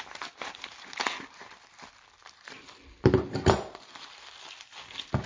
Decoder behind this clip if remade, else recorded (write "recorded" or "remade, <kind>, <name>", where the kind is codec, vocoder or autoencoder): recorded